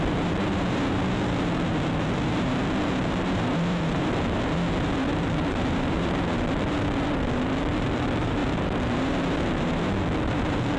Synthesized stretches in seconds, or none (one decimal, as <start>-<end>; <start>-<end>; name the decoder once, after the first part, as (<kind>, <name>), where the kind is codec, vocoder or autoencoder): 0.0-10.8 (vocoder, BigVGAN v2)